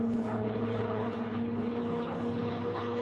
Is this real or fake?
fake